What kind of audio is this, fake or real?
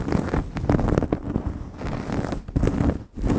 real